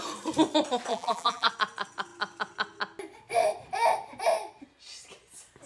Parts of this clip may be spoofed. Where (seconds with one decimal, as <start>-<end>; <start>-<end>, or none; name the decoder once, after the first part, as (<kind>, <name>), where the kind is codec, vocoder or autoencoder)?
0.9-1.5 (vocoder, BigVGAN v2)